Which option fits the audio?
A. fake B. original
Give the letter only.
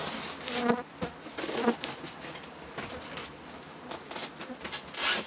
B